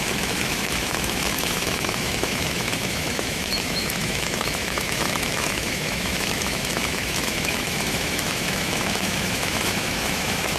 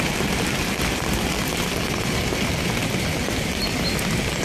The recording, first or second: second